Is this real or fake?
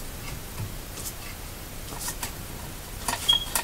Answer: fake